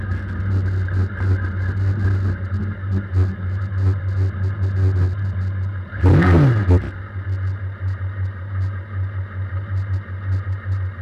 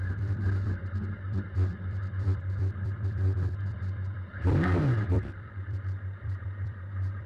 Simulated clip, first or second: second